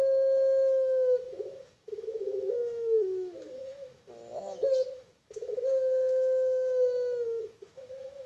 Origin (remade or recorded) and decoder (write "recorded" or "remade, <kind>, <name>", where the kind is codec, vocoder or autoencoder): remade, autoencoder, DAC-VAE